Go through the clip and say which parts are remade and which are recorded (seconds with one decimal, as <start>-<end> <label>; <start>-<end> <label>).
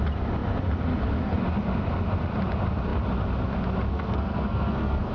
0.0-3.9 recorded; 3.9-5.1 remade